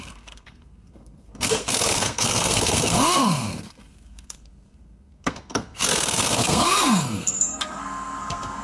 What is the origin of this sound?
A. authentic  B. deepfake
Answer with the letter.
B